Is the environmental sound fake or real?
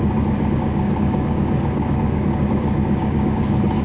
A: fake